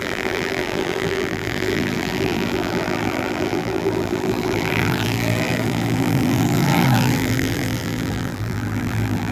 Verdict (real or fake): fake